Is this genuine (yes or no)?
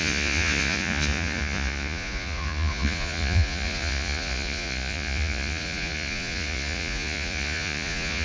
no